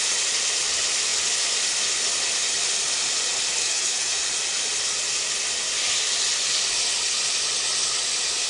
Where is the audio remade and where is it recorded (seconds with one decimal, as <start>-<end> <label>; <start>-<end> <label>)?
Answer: 0.0-3.6 recorded; 3.6-4.2 remade; 4.2-8.5 recorded